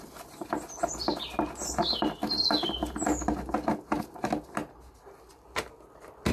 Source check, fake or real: real